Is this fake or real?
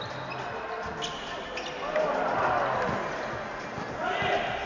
real